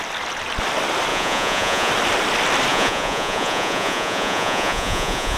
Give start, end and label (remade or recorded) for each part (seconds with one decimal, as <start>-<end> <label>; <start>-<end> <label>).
0.0-1.1 recorded; 1.1-1.9 remade; 1.9-2.7 recorded; 2.7-5.4 remade